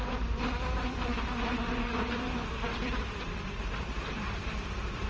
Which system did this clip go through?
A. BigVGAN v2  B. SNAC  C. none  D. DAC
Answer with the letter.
A